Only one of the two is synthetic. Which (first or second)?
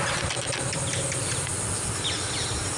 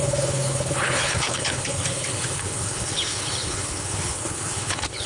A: second